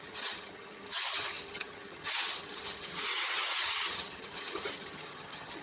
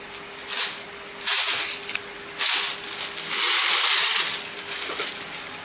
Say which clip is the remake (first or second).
first